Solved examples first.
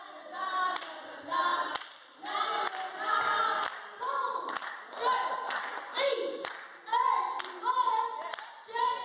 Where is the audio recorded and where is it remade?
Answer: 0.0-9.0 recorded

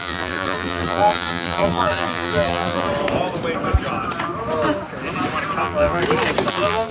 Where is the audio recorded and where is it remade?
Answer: 0.0-2.9 remade; 2.9-5.6 recorded; 5.6-6.0 remade; 6.0-6.5 recorded; 6.5-6.9 remade

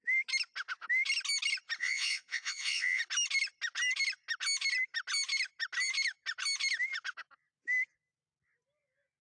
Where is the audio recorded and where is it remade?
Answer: 0.0-1.8 recorded; 1.8-3.0 remade; 3.0-9.2 recorded

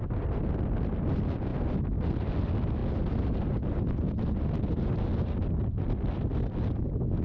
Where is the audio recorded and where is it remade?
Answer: 0.0-7.2 recorded

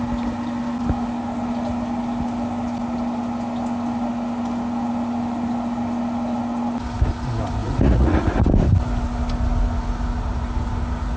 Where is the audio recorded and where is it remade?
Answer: 0.0-7.6 recorded; 7.6-8.5 remade; 8.5-11.2 recorded